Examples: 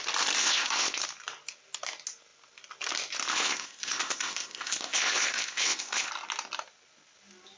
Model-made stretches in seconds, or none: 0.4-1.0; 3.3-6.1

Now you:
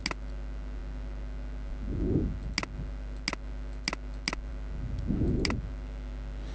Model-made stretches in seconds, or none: none